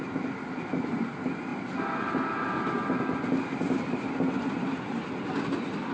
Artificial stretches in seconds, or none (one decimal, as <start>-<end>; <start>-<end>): none